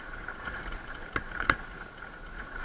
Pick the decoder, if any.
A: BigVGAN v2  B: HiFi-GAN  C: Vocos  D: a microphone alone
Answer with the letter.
C